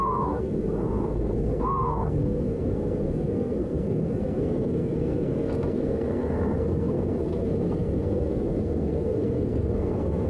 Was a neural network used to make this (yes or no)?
yes